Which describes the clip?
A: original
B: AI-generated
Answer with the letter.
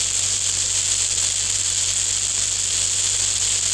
A